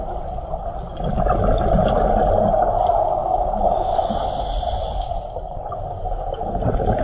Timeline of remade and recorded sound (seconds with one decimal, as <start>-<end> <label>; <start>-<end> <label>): 0.0-3.2 recorded; 3.2-4.2 remade; 4.2-7.0 recorded